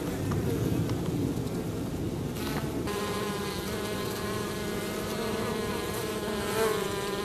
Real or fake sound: real